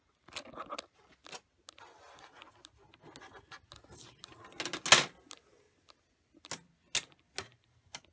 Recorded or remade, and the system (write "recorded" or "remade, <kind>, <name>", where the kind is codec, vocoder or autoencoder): recorded